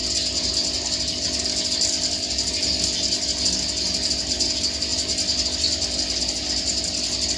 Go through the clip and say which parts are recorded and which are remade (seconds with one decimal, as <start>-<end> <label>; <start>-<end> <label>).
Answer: 0.0-7.4 recorded